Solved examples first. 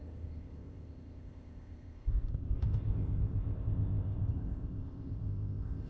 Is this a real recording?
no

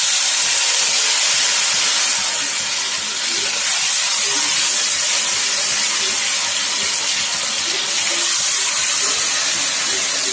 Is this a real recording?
yes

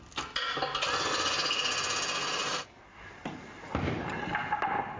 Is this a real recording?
yes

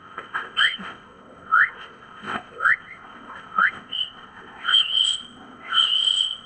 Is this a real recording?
no